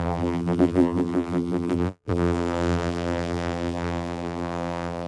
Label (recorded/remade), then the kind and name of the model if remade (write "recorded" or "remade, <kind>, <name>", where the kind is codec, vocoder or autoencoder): remade, vocoder, BigVGAN v2